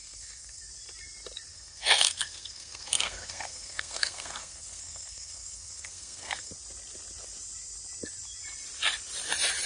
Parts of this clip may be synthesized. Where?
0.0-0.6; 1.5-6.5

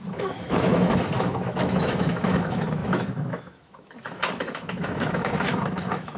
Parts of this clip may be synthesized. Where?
0.0-6.2